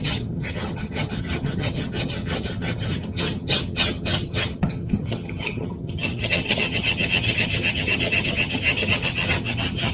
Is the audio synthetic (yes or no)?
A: yes